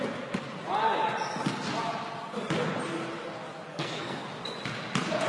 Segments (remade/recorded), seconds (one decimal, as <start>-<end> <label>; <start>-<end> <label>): 0.0-3.7 recorded; 3.7-4.3 remade; 4.3-5.3 recorded